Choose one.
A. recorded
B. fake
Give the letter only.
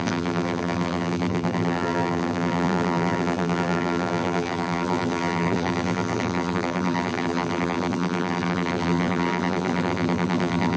B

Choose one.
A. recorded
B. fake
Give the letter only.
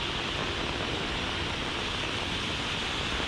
A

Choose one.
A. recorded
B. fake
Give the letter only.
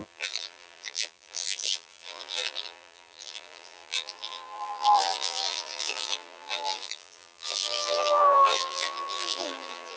B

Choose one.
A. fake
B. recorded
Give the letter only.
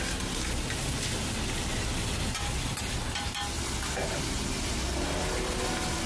B